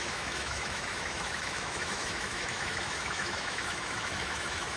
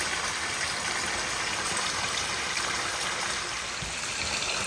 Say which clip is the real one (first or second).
second